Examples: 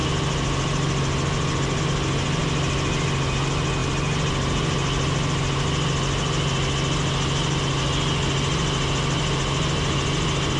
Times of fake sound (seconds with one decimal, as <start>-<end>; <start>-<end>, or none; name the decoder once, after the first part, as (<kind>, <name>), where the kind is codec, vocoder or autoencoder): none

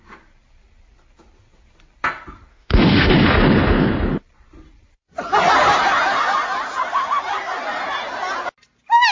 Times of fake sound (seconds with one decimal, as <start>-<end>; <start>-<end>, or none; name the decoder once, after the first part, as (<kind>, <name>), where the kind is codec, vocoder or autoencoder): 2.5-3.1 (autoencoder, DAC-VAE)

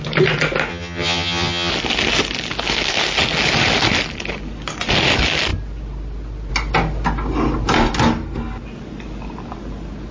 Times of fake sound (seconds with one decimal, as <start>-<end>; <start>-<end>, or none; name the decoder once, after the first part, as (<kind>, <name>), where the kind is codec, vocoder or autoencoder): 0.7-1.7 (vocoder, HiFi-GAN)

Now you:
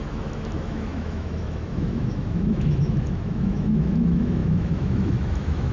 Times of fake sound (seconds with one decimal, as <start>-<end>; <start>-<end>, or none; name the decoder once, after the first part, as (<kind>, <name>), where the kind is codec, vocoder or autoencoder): 0.0-5.7 (autoencoder, DAC-VAE)